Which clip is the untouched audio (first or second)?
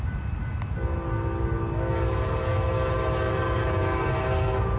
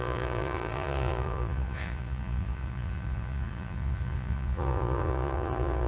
first